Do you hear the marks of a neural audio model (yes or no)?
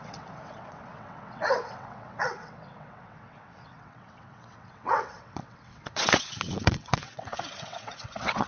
yes